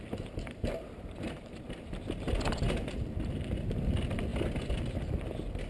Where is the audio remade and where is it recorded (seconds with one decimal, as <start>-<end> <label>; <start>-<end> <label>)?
0.0-1.6 remade; 1.6-5.7 recorded